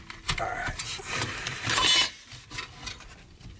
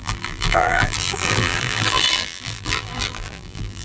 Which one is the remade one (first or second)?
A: second